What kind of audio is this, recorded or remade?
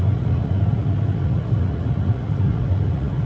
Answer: remade